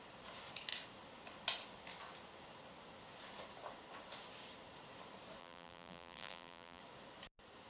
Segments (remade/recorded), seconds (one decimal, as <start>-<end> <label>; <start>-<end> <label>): 0.0-5.4 recorded; 5.4-6.8 remade; 6.8-7.7 recorded

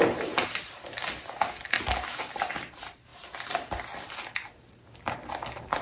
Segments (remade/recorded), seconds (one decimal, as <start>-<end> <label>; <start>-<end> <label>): 0.0-5.8 recorded

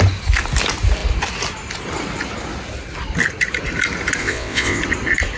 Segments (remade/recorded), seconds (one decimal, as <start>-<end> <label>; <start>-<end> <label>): 0.0-4.2 recorded; 4.2-4.8 remade; 4.8-5.4 recorded

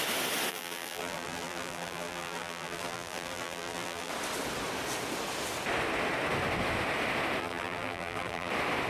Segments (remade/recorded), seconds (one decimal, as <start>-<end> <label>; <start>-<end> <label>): 0.0-0.5 recorded; 0.5-4.1 remade; 4.1-7.4 recorded; 7.4-8.5 remade; 8.5-8.9 recorded

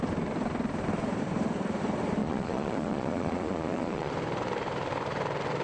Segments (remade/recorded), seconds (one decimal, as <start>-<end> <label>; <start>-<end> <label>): 0.0-2.2 recorded; 2.2-4.1 remade; 4.1-5.6 recorded

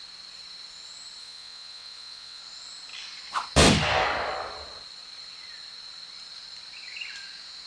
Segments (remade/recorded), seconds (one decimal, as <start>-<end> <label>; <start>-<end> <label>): 0.0-1.2 recorded; 1.2-2.4 remade; 2.4-7.7 recorded

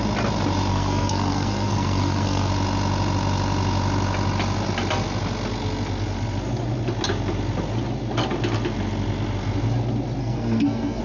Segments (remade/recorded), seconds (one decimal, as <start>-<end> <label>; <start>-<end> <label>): 0.0-0.7 recorded; 0.7-2.5 remade; 2.5-10.2 recorded; 10.2-11.0 remade